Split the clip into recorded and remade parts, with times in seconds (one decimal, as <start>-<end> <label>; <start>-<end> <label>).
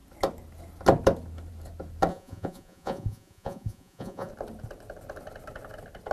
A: 0.0-2.1 recorded; 2.1-4.3 remade; 4.3-6.1 recorded